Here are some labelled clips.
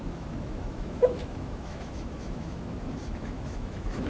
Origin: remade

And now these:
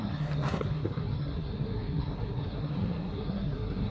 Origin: remade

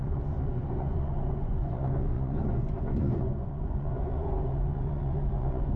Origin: remade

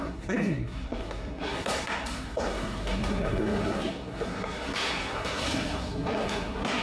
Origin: remade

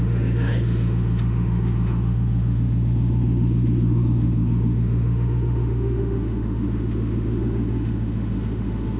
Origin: remade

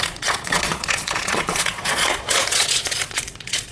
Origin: remade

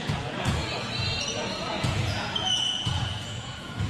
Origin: remade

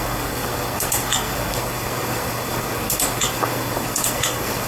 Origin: remade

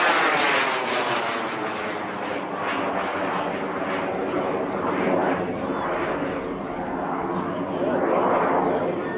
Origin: recorded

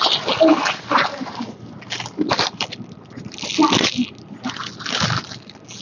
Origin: recorded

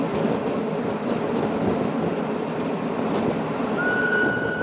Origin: recorded